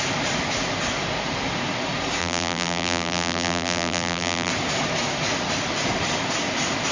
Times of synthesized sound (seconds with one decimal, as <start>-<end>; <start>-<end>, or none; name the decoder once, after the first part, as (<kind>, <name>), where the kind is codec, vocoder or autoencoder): 2.2-4.5 (vocoder, BigVGAN v2)